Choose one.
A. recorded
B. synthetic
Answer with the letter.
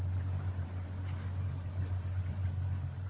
A